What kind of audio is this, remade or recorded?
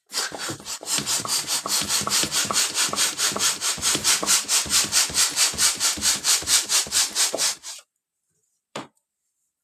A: remade